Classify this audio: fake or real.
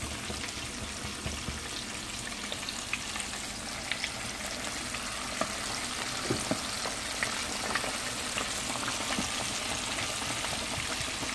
real